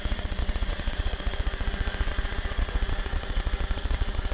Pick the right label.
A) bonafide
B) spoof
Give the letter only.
B